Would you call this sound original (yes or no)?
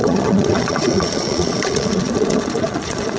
no